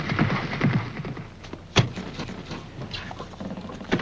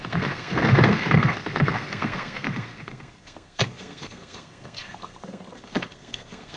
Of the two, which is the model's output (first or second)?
second